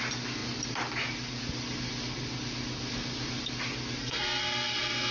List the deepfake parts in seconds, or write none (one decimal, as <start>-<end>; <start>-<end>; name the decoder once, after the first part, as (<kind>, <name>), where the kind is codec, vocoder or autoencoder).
4.0-5.1 (codec, SNAC)